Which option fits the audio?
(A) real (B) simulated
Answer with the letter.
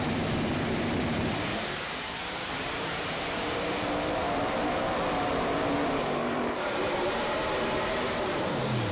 B